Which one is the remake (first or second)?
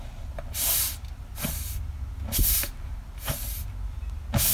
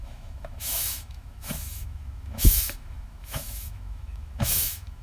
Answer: second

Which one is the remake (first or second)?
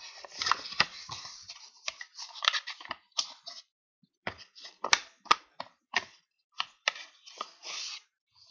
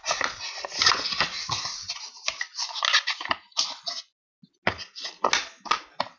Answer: first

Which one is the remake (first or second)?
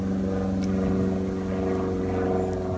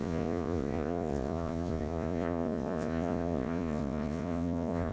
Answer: second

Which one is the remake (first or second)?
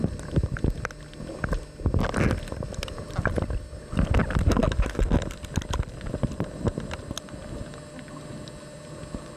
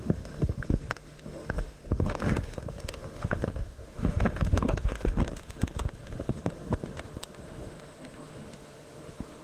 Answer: second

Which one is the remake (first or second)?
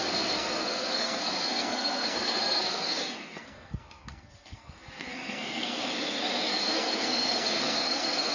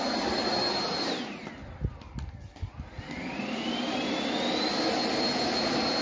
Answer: first